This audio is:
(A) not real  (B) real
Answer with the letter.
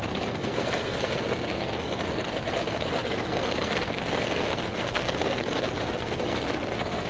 A